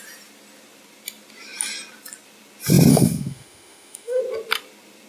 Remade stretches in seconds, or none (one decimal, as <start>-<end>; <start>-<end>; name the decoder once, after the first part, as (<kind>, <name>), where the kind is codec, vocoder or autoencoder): 2.9-4.2 (autoencoder, DAC-VAE)